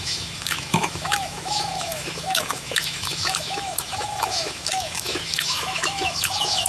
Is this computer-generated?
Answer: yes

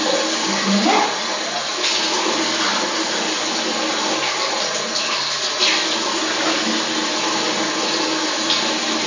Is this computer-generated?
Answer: no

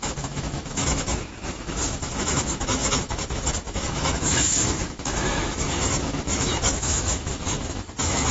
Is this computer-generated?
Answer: yes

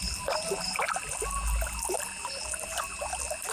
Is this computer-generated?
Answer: no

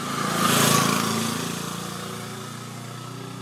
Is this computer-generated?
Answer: no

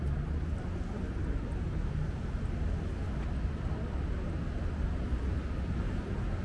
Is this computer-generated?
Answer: no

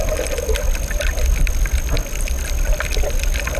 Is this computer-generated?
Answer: no